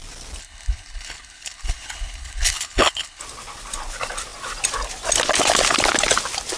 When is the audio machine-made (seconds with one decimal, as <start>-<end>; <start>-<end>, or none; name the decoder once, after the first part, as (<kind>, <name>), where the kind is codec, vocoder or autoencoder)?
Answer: 0.4-3.2 (codec, HILCodec)